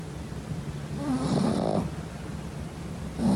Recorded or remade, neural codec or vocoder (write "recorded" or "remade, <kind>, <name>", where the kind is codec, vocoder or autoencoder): recorded